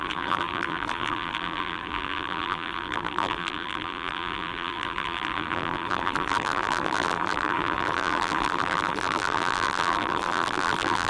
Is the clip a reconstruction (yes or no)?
yes